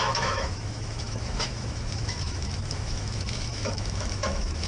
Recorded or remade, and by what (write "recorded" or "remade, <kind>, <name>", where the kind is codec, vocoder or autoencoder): remade, autoencoder, DAC-VAE